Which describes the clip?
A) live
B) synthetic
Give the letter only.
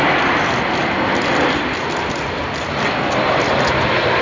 A